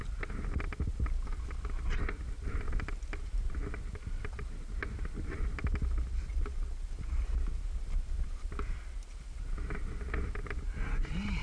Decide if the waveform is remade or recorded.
recorded